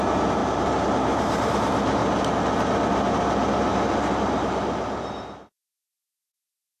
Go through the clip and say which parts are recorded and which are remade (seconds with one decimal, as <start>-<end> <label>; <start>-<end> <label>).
0.0-0.4 recorded; 0.4-1.5 remade; 1.5-6.8 recorded